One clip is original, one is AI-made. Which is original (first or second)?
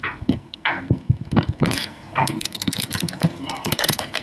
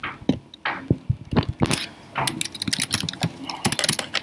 second